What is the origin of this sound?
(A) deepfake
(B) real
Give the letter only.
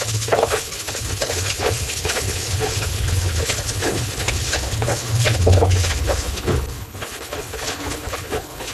A